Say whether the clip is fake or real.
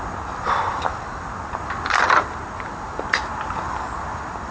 real